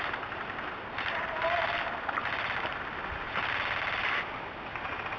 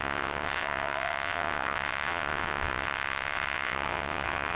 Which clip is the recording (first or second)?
first